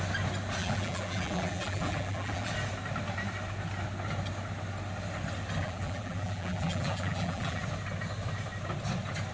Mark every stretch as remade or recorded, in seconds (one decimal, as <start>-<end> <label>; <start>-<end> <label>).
0.0-0.6 recorded; 0.6-2.5 remade; 2.5-5.6 recorded; 5.6-7.6 remade; 7.6-9.3 recorded